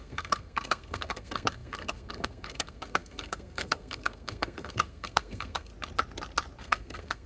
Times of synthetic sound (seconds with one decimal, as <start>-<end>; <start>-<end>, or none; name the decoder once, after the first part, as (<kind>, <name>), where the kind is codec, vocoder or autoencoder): 0.0-5.7 (codec, SNAC); 6.6-7.3